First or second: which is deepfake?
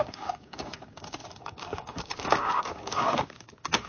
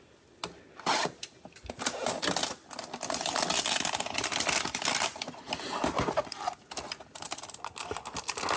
first